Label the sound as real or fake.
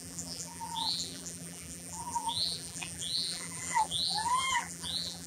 fake